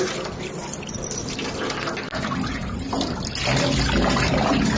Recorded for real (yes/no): yes